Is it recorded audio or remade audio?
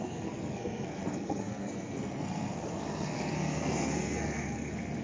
remade